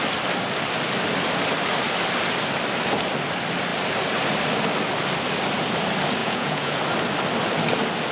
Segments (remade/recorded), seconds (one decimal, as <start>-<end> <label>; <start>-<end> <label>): 0.0-6.2 recorded; 6.2-6.8 remade; 6.8-8.1 recorded